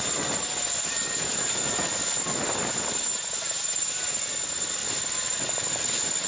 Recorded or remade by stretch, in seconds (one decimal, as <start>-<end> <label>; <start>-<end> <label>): 0.0-6.3 recorded